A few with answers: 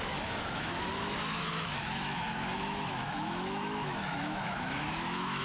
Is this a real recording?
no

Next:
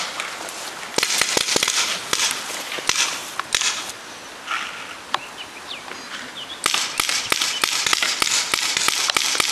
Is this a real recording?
yes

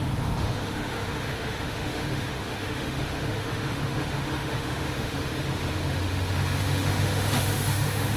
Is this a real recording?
no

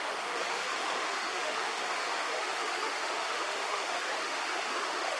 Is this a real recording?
no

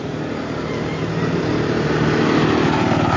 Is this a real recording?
yes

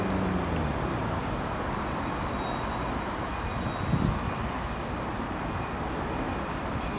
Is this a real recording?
yes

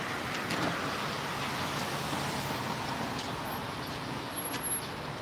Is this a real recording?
yes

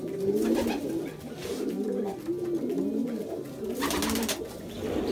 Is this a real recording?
yes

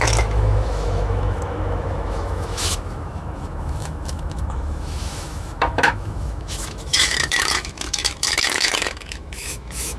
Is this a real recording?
no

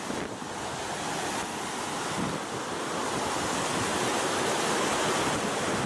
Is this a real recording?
yes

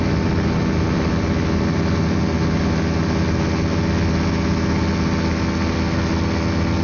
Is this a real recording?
yes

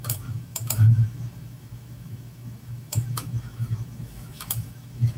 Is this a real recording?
no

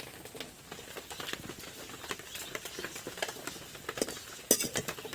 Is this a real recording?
yes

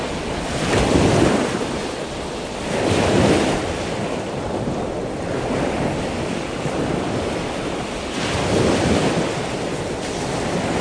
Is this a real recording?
yes